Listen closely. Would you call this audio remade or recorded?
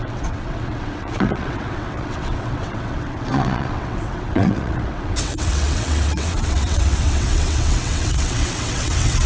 remade